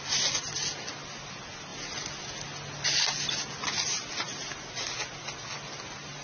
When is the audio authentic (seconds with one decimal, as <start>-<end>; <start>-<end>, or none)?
0.0-6.2